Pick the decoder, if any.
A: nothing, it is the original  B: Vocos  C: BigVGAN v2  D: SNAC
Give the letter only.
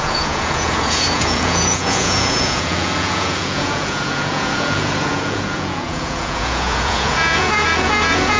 B